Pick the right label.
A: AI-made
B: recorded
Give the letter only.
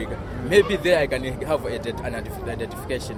B